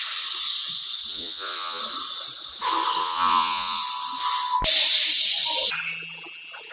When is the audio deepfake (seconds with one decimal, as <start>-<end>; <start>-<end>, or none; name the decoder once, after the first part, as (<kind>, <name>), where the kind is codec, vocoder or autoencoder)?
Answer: 1.1-1.8 (vocoder, Vocos); 3.0-3.8